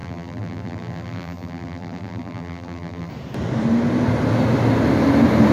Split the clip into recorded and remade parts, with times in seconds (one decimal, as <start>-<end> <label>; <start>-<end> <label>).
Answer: 0.0-3.1 remade; 3.1-5.5 recorded